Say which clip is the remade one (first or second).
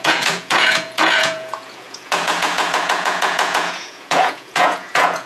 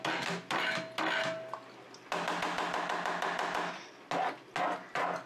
first